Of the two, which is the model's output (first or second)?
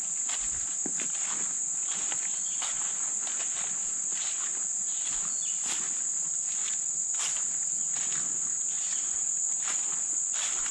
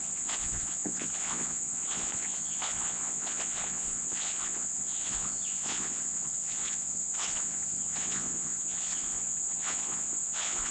second